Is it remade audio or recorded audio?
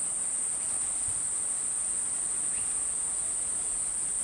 recorded